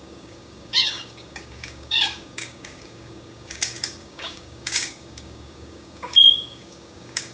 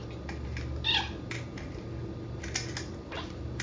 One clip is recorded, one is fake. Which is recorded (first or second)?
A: second